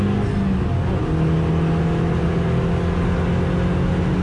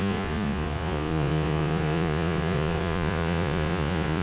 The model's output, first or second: second